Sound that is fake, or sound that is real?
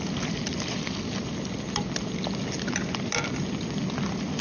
real